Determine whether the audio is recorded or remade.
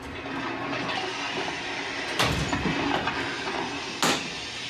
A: recorded